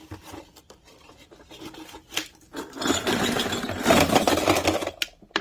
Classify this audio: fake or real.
fake